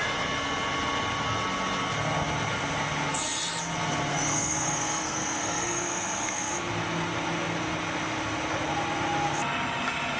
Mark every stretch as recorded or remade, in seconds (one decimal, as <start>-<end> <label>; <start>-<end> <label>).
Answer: 0.0-4.1 recorded; 4.1-6.5 remade; 6.5-10.2 recorded